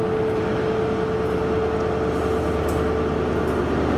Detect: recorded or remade recorded